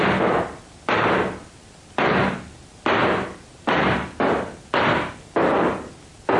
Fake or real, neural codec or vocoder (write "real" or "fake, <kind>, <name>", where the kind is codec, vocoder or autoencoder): real